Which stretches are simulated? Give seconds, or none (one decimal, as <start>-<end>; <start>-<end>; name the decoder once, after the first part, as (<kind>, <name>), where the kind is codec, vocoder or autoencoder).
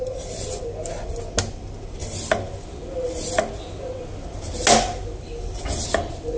none